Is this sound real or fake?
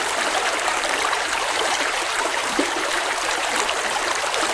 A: fake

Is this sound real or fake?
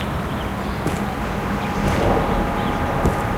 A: real